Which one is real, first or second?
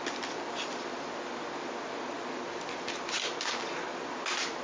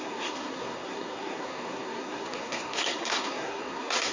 first